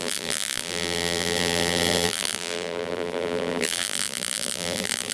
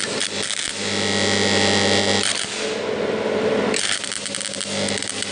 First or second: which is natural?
second